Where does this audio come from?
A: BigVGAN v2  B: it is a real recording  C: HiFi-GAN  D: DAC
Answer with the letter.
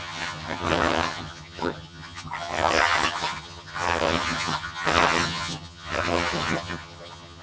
C